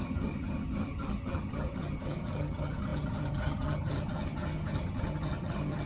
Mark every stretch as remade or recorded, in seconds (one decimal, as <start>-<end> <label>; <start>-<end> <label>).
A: 0.0-5.9 remade